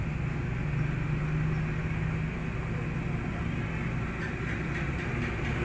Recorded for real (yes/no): yes